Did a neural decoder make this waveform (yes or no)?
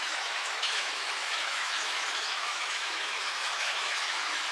yes